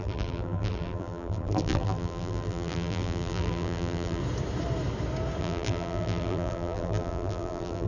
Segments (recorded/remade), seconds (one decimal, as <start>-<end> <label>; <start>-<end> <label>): 0.0-4.2 remade; 4.2-5.4 recorded; 5.4-7.9 remade